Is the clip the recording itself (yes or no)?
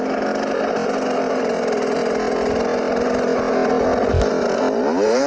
yes